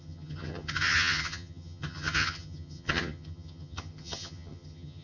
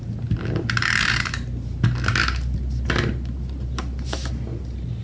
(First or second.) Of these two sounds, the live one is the second